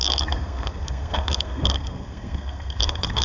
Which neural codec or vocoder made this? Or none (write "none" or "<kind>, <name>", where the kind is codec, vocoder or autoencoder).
codec, SNAC